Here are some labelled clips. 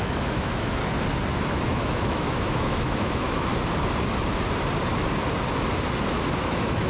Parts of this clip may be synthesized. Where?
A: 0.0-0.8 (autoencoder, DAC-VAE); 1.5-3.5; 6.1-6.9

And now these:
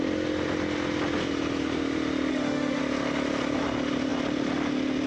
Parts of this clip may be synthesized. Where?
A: 2.3-2.8 (autoencoder, DAC-VAE)

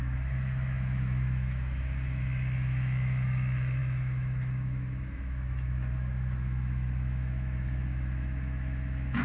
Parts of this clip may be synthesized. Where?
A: 0.0-9.2 (autoencoder, DAC-VAE)

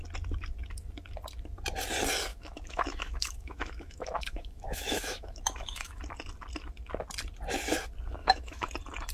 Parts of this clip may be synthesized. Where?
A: 2.3-6.0 (autoencoder, DAC-VAE); 8.2-8.7

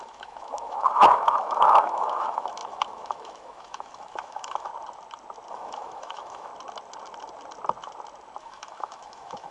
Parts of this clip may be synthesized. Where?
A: 0.0-4.7 (autoencoder, DAC-VAE); 5.5-6.5; 8.4-9.5

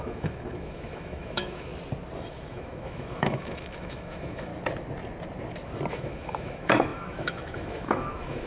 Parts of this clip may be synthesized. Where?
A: 0.0-1.7 (autoencoder, DAC-VAE); 2.3-4.5; 5.9-8.5